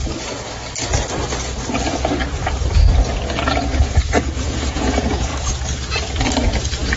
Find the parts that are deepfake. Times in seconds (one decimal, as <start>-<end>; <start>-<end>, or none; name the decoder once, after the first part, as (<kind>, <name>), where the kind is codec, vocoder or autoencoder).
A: 4.2-5.3 (vocoder, Vocos)